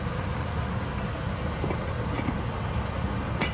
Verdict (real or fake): real